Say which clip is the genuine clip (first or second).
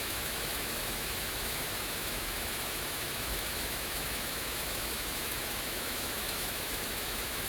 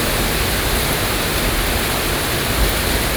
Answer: second